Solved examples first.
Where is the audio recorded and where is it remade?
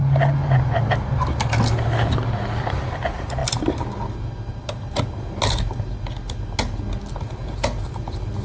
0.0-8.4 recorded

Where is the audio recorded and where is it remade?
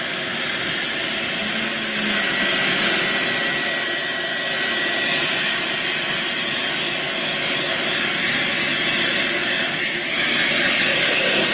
0.0-11.5 recorded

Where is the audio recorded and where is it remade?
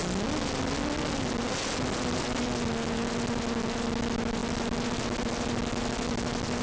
0.0-6.6 recorded